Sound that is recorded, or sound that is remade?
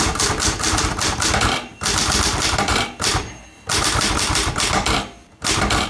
remade